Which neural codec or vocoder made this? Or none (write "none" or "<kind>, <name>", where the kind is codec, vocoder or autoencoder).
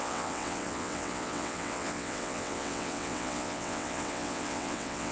vocoder, WaveNeXt